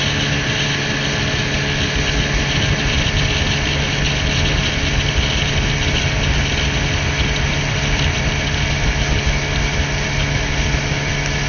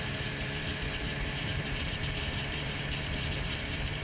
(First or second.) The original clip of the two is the first